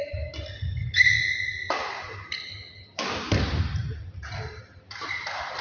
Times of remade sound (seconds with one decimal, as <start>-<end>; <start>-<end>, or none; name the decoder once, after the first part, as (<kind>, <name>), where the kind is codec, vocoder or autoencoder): none